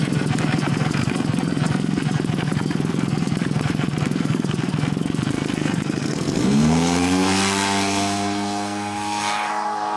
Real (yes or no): no